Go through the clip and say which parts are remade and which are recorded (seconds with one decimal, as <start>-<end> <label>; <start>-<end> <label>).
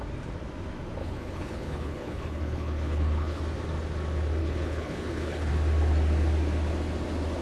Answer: 0.0-1.0 recorded; 1.0-3.4 remade; 3.4-4.4 recorded; 4.4-5.5 remade; 5.5-7.4 recorded